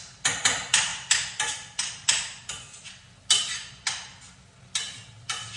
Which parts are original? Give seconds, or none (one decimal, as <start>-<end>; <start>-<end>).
0.0-5.6